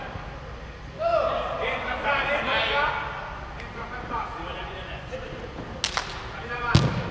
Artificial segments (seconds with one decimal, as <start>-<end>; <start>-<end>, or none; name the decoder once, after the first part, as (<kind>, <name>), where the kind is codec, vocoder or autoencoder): 4.6-5.1 (vocoder, Vocos)